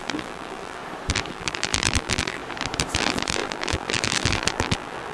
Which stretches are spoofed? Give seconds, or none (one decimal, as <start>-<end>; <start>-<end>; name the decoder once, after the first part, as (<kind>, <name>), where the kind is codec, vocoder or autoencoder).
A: 0.0-0.8 (vocoder, BigVGAN v2); 1.3-2.4; 3.0-5.1